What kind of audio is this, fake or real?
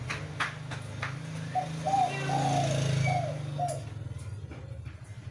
real